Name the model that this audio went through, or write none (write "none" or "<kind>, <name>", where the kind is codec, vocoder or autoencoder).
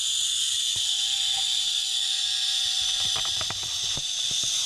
none